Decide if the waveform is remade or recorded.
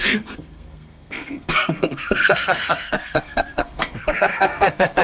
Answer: remade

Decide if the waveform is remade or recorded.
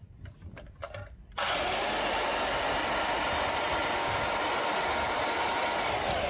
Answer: recorded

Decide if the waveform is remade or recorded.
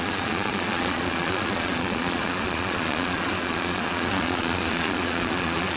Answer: remade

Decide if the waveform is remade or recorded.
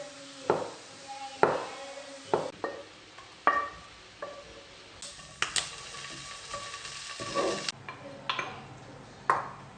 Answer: recorded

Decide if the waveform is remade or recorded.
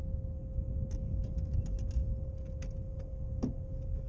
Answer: recorded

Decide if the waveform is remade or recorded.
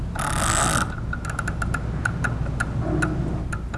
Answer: recorded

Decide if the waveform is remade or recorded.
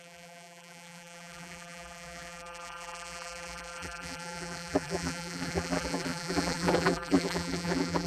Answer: remade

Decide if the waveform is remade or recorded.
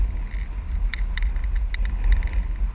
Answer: recorded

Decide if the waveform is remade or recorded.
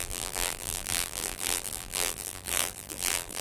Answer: remade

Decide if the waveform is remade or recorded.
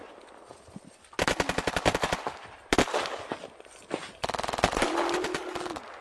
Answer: recorded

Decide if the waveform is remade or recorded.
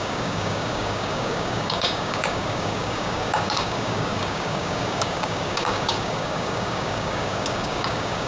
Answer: remade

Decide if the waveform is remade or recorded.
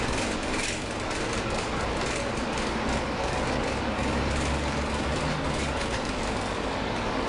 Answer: remade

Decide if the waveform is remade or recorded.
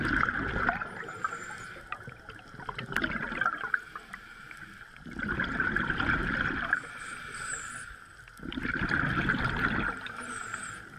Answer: recorded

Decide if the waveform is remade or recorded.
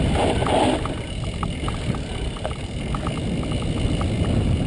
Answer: recorded